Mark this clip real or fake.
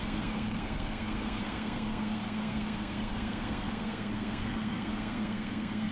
fake